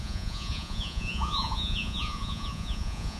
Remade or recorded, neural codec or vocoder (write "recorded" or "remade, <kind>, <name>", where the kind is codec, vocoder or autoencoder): remade, vocoder, Vocos